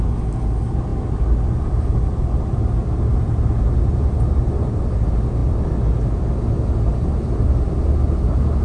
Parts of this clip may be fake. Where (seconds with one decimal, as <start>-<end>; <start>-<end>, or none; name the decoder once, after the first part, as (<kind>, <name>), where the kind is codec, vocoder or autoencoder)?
none